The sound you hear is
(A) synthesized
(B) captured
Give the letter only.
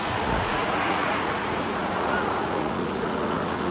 A